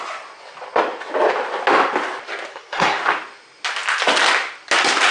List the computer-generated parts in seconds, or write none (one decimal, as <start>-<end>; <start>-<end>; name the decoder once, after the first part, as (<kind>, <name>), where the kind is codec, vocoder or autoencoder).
2.5-3.0 (codec, SNAC)